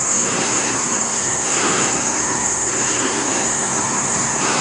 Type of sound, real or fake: fake